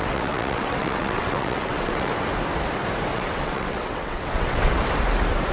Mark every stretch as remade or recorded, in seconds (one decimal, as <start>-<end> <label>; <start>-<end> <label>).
0.0-2.1 remade; 2.1-3.1 recorded; 3.1-4.7 remade; 4.7-5.5 recorded